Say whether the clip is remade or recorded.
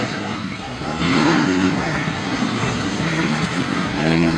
remade